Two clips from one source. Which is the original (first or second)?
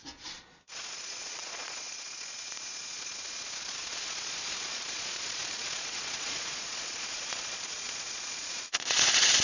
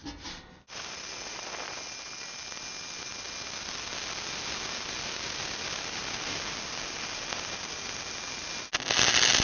second